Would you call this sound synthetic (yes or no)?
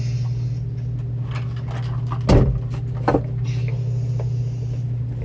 no